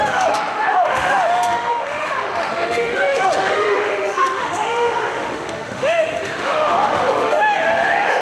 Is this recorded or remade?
remade